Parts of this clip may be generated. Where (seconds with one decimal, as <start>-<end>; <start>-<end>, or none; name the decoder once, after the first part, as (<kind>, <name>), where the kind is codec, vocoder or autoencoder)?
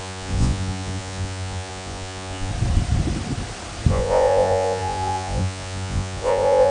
0.0-2.5 (vocoder, Vocos); 3.9-6.7